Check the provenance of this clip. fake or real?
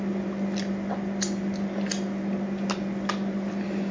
real